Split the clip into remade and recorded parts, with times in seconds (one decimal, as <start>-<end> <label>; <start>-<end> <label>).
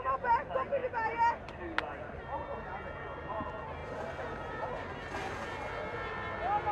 0.0-6.7 recorded